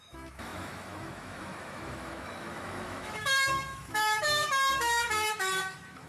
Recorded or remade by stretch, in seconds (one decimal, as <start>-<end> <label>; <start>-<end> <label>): 0.0-6.1 remade